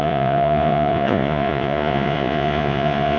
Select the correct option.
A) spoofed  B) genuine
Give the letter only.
A